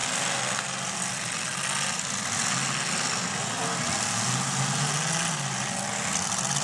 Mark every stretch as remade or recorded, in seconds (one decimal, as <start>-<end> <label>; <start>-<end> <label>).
0.0-6.6 recorded

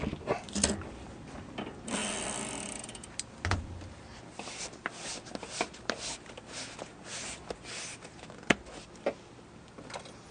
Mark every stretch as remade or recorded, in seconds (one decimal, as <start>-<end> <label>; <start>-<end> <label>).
0.0-10.3 recorded

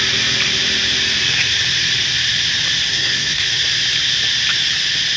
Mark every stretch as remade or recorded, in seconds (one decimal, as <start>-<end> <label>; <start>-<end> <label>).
0.0-2.9 recorded; 2.9-3.5 remade; 3.5-5.2 recorded